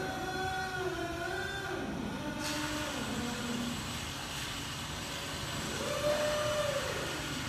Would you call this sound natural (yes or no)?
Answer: yes